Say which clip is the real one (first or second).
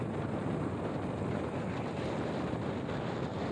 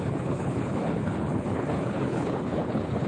first